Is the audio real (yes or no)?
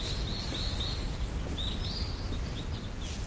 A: yes